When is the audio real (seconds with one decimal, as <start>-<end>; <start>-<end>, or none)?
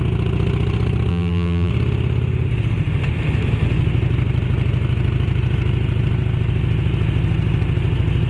0.0-1.1; 1.7-8.3